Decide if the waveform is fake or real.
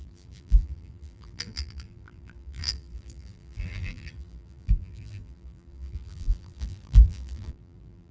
fake